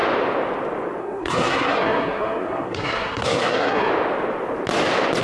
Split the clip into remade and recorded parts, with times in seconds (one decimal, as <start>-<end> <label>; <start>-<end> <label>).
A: 0.0-1.0 recorded; 1.0-3.9 remade; 3.9-5.2 recorded